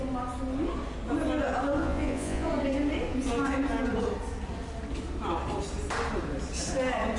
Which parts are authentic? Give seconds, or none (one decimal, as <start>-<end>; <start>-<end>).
0.0-1.8; 2.5-7.2